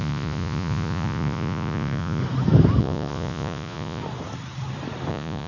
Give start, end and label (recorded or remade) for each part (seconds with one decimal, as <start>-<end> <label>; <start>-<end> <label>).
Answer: 0.0-2.2 remade; 2.2-2.8 recorded; 2.8-4.0 remade; 4.0-5.1 recorded; 5.1-5.5 remade